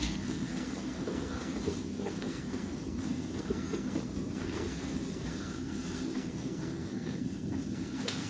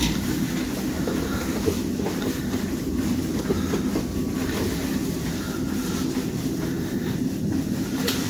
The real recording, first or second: second